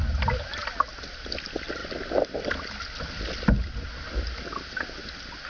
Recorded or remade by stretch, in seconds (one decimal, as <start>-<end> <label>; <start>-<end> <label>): 0.0-5.5 recorded